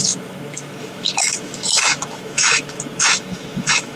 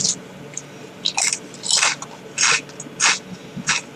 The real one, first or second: second